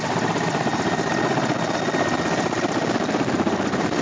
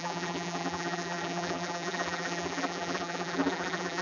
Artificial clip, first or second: second